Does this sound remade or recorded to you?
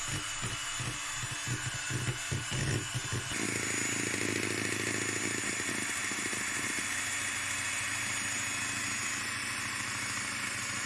recorded